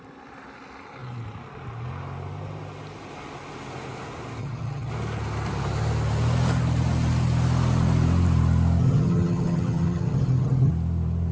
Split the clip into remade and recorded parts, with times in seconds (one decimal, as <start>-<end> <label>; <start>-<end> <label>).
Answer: 0.0-4.4 recorded; 4.4-4.9 remade; 4.9-8.8 recorded; 8.8-10.7 remade; 10.7-11.3 recorded